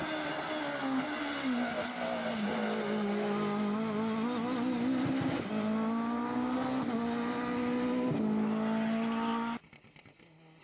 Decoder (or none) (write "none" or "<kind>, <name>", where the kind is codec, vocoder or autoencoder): none